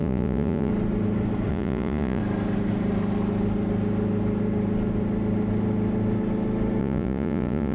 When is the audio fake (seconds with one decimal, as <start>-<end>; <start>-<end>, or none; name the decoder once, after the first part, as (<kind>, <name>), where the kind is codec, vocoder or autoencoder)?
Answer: 0.0-0.7 (vocoder, Vocos); 1.5-2.2; 6.8-7.7